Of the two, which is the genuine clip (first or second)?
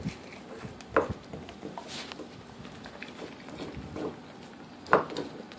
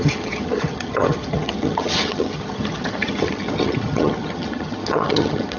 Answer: first